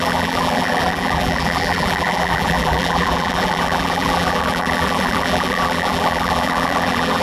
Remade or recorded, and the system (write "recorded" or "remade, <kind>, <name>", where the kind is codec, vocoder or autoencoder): remade, vocoder, BigVGAN v2